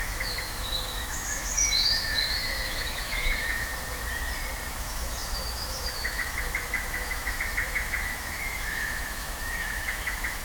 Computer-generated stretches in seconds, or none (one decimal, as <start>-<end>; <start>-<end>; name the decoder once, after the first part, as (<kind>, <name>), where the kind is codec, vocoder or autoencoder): 0.0-3.7 (autoencoder, DAC-VAE); 4.7-10.4